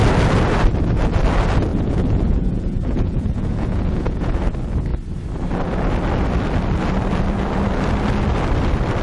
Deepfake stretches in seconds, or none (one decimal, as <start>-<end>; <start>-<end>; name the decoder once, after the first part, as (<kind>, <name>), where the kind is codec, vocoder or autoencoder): 1.7-4.4 (vocoder, Vocos)